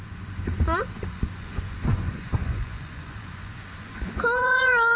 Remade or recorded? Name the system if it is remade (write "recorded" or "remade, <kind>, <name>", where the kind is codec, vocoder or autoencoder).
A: remade, vocoder, Vocos